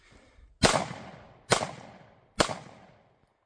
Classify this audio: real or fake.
real